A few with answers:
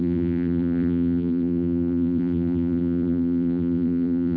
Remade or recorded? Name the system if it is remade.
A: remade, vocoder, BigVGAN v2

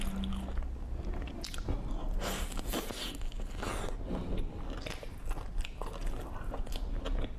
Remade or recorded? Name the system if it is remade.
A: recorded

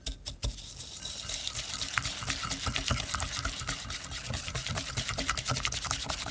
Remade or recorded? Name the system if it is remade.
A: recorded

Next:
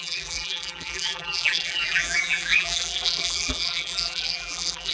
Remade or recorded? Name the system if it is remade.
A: remade, vocoder, BigVGAN v2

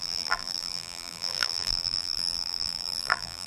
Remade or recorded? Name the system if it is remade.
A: remade, vocoder, BigVGAN v2